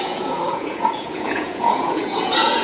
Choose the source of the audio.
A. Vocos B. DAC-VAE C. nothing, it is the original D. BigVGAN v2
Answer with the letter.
A